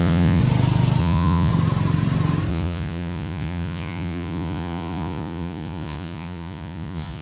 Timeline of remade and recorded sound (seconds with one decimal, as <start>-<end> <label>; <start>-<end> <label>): 0.0-0.4 remade; 0.4-1.0 recorded; 1.0-1.5 remade; 1.5-2.5 recorded; 2.5-7.2 remade